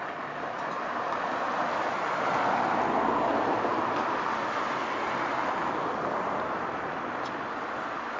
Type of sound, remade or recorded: recorded